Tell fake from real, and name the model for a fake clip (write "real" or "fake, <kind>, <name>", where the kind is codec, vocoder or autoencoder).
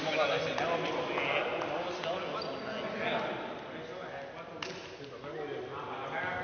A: real